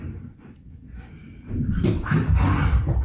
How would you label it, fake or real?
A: fake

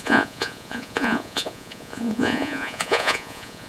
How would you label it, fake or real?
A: fake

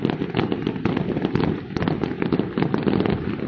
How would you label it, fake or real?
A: real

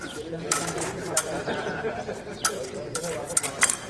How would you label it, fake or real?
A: fake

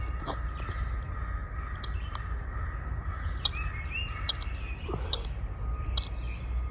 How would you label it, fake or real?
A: real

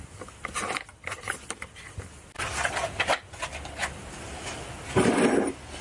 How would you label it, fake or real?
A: real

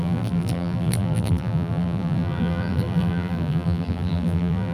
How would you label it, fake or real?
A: fake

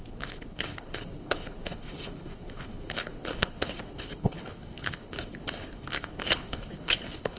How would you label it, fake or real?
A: fake